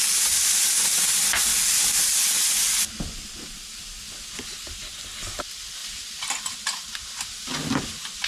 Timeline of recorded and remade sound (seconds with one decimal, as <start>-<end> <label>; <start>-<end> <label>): 0.0-5.8 recorded; 5.8-8.3 remade